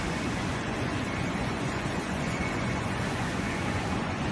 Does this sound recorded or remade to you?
remade